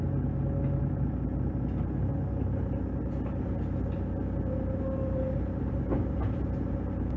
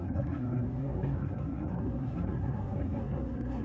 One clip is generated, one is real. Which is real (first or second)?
first